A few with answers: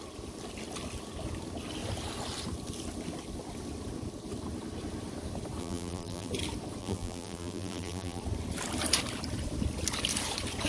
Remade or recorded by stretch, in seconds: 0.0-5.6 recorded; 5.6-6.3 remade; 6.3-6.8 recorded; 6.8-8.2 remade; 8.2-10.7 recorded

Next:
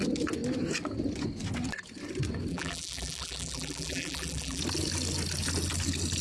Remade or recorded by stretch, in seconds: 0.0-2.5 recorded; 2.5-4.6 remade; 4.6-6.2 recorded

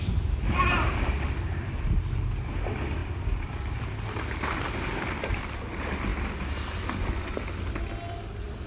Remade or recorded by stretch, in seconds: 0.0-3.0 recorded; 3.0-4.4 remade; 4.4-8.7 recorded

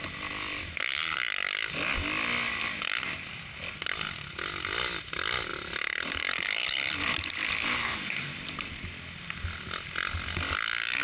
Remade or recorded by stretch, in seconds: 0.0-0.8 remade; 0.8-5.5 recorded; 5.5-8.7 remade; 8.7-11.0 recorded